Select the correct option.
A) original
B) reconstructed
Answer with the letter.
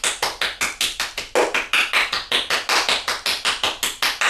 A